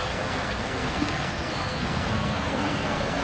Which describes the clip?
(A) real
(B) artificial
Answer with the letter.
B